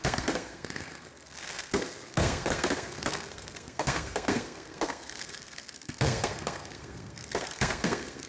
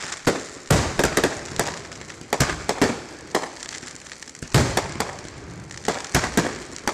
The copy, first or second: first